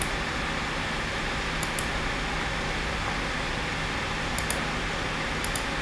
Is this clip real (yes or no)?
yes